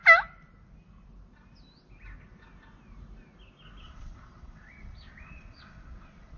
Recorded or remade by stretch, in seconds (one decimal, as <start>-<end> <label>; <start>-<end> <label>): 0.0-3.8 recorded; 3.8-6.4 remade